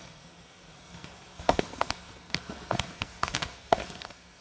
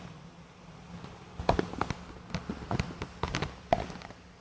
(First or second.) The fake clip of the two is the first